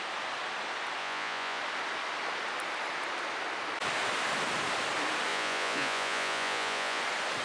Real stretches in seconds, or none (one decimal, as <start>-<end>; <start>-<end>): 0.0-1.0; 1.6-5.3; 7.0-7.4